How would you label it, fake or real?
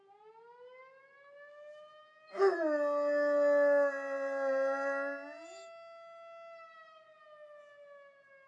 real